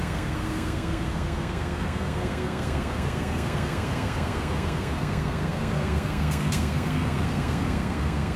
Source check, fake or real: fake